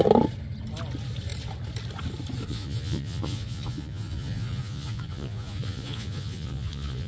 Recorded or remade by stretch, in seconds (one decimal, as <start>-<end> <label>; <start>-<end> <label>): 0.0-2.5 recorded; 2.5-7.1 remade